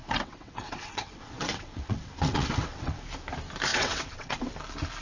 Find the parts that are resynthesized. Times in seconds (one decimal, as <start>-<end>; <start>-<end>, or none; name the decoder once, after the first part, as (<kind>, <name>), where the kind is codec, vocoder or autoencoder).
0.0-3.0 (vocoder, WaveNeXt); 3.7-4.5